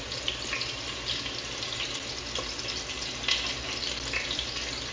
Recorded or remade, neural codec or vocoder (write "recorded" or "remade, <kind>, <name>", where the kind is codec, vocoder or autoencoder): recorded